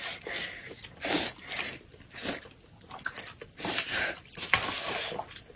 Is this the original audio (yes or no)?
no